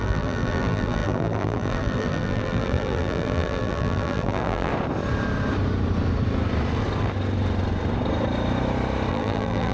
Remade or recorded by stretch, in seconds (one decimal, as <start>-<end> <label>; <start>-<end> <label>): 0.0-4.7 remade; 4.7-9.1 recorded; 9.1-9.7 remade